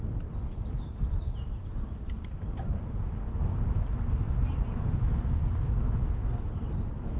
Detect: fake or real real